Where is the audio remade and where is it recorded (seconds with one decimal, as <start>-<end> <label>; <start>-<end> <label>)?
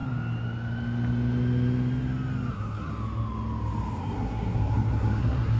0.0-2.5 recorded; 2.5-2.9 remade; 2.9-4.0 recorded; 4.0-5.6 remade